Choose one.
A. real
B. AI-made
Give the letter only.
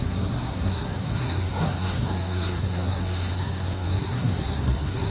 B